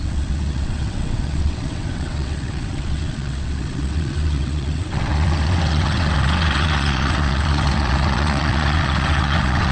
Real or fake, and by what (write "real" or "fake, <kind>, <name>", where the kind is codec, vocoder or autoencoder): fake, vocoder, WaveNeXt